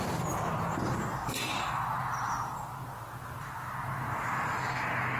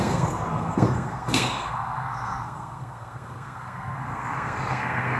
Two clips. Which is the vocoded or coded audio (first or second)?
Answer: second